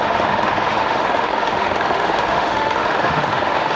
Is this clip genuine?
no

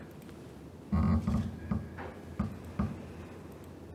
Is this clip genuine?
yes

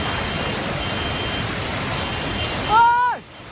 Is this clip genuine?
yes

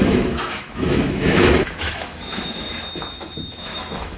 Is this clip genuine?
no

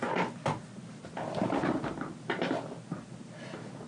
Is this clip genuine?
yes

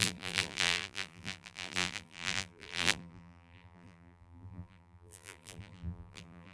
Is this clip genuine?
no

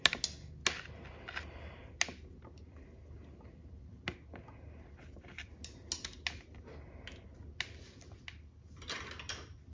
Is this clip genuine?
yes